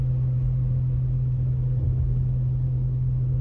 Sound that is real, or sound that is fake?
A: real